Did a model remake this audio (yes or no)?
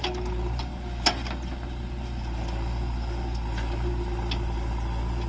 no